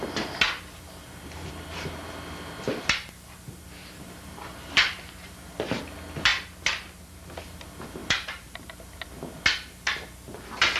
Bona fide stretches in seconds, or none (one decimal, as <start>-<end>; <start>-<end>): 0.0-1.0; 1.5-3.8; 5.8-8.0; 8.5-10.8